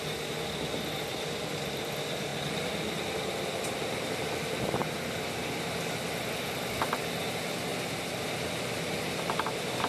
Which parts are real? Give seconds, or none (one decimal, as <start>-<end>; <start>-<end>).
0.0-9.9